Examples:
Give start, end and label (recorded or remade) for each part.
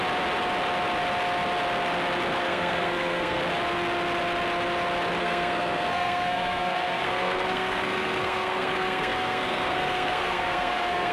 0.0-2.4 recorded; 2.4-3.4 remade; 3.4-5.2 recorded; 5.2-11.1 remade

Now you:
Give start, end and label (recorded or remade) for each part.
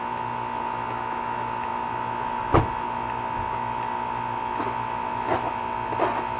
0.0-6.4 recorded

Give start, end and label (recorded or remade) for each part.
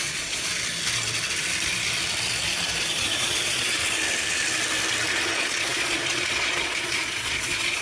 0.0-0.5 remade; 0.5-2.8 recorded; 2.8-3.8 remade; 3.8-5.3 recorded; 5.3-7.8 remade